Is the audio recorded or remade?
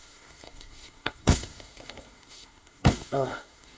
remade